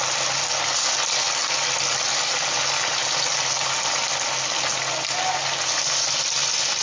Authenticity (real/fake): real